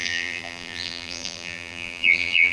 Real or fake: fake